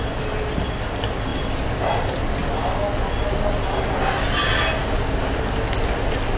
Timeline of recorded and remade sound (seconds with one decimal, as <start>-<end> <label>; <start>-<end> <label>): 0.0-6.4 recorded